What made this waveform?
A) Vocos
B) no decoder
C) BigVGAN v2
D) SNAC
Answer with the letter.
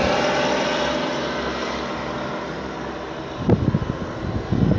B